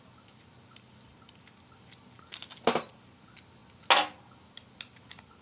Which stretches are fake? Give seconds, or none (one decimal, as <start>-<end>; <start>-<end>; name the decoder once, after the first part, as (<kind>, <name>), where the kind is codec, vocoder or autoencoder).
none